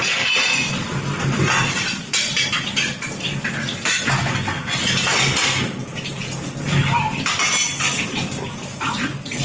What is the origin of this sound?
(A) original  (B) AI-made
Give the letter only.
A